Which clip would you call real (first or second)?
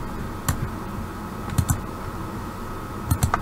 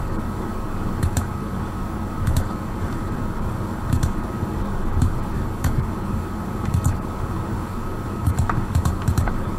first